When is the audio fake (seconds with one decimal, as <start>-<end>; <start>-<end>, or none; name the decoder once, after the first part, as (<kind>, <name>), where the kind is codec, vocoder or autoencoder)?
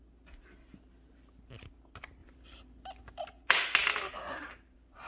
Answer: 2.2-3.2 (vocoder, BigVGAN v2)